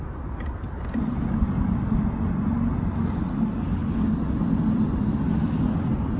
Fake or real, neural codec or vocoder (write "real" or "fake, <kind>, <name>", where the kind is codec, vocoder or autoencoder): real